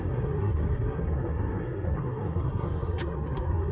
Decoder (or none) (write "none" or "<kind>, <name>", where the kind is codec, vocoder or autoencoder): codec, SNAC